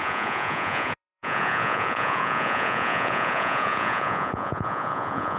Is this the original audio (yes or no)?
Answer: no